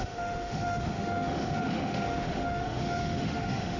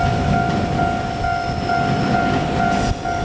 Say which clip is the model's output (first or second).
first